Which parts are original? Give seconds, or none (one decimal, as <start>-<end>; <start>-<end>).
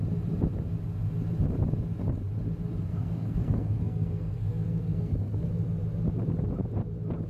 0.0-2.9; 5.5-7.3